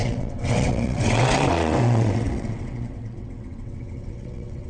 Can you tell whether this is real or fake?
fake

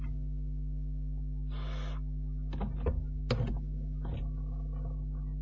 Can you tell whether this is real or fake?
real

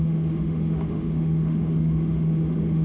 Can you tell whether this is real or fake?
fake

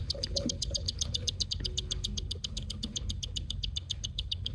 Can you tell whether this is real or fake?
fake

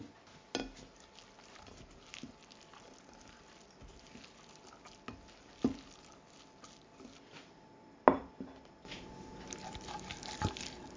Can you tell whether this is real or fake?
real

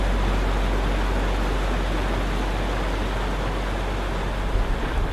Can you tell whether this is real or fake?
real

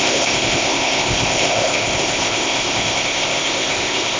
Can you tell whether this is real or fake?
fake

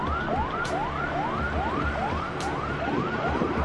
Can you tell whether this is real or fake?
fake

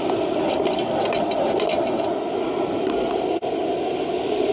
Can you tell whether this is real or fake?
real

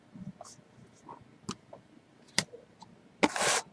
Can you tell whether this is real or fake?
real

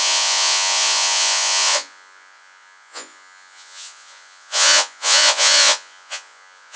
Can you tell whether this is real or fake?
fake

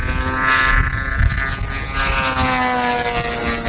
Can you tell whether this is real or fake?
real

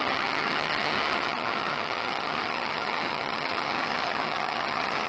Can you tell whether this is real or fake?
fake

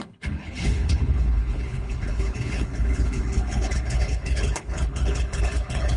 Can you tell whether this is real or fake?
fake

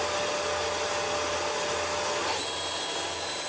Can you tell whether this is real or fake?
real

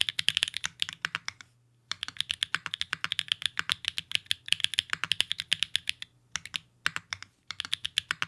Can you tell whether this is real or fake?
real